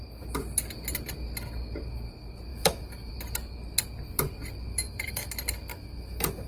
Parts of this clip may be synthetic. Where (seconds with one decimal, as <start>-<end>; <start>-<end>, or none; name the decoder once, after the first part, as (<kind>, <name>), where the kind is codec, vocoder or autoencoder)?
2.5-3.1 (autoencoder, DAC-VAE); 4.7-5.3; 5.7-6.5